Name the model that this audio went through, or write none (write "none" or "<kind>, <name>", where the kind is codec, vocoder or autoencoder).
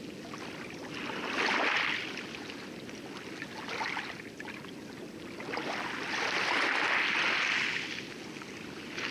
none